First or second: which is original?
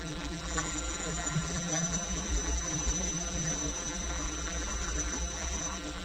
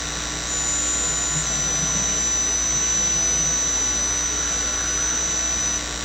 second